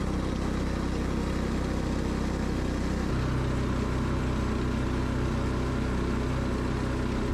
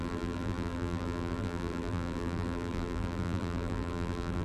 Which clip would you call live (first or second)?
first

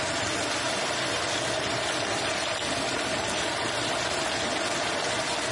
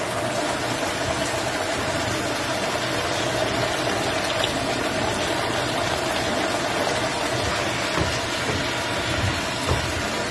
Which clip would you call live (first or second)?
second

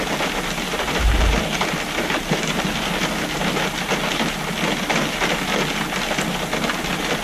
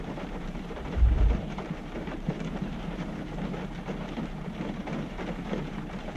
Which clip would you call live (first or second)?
first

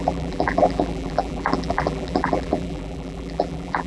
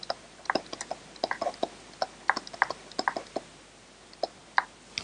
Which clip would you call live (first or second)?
second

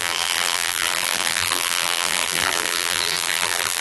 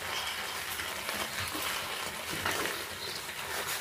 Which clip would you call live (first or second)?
second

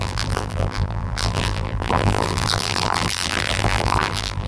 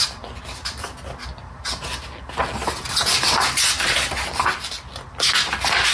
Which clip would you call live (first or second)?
second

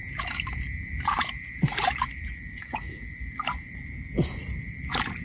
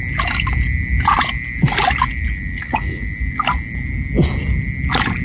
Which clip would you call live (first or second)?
second